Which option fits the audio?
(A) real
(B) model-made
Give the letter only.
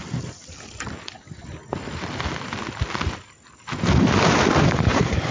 B